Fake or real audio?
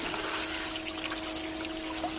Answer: real